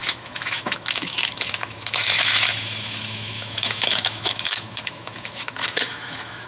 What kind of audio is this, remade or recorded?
remade